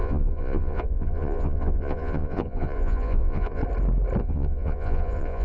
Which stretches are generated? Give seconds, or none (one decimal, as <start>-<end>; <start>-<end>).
0.0-3.6; 4.2-5.4